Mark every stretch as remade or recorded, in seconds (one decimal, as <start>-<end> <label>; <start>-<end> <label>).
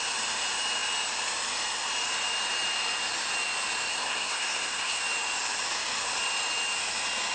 0.0-3.9 recorded; 3.9-5.0 remade; 5.0-7.3 recorded